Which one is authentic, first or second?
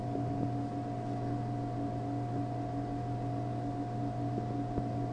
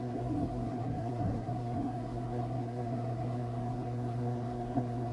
first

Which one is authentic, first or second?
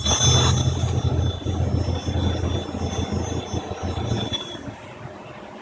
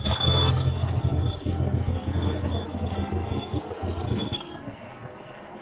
first